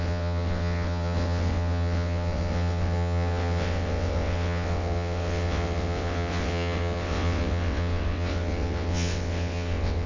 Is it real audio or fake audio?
fake